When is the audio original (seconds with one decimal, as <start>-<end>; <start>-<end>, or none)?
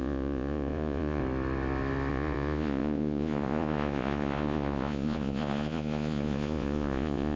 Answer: 1.2-2.1